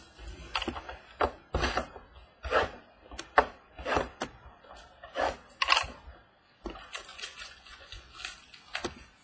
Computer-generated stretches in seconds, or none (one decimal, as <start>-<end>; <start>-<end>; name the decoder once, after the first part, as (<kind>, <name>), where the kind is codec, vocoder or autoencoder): 7.1-8.1 (vocoder, Vocos)